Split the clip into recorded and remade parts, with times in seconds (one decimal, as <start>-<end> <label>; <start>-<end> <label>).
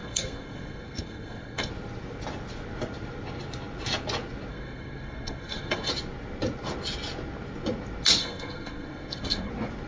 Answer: 0.0-1.7 remade; 1.7-4.5 recorded; 4.5-5.9 remade; 5.9-8.2 recorded; 8.2-9.5 remade; 9.5-9.9 recorded